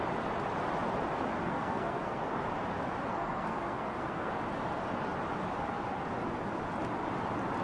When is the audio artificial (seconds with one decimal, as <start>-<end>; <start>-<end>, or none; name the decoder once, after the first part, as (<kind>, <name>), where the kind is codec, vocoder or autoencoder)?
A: 1.3-2.2 (codec, SNAC); 3.1-4.3